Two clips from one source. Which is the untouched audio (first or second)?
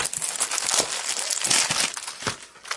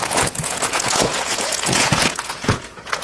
first